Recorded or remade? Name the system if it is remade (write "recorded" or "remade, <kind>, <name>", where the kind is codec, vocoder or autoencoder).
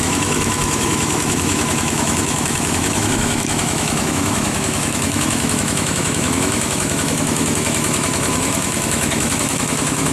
remade, autoencoder, DAC-VAE